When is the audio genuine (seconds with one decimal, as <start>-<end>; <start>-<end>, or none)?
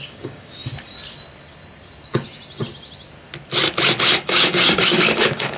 0.6-4.0